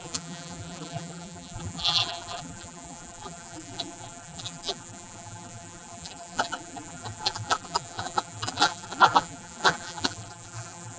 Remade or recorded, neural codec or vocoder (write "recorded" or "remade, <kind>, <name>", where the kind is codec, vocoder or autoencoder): remade, vocoder, BigVGAN v2